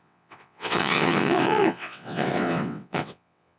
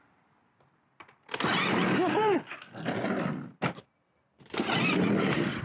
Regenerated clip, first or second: first